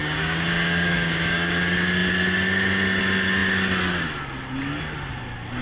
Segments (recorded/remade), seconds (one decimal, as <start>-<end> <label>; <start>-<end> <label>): 0.0-1.6 remade; 1.6-5.6 recorded